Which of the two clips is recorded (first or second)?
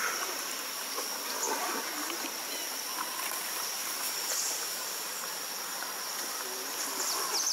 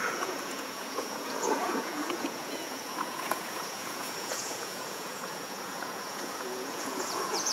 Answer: first